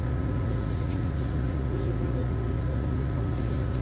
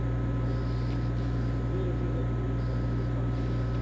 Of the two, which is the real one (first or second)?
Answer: second